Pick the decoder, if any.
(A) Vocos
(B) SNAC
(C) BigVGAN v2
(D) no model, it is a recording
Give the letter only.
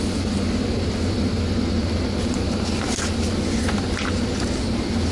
D